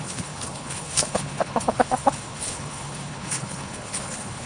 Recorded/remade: remade